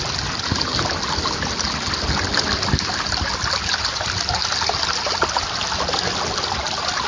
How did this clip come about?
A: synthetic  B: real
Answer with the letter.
B